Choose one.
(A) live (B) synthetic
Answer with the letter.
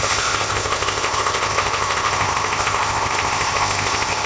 B